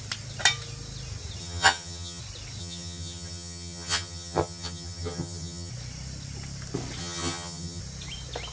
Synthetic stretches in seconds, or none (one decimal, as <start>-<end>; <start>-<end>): 1.4-2.2; 2.6-5.7; 7.0-7.8